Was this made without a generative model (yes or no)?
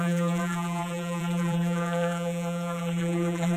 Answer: no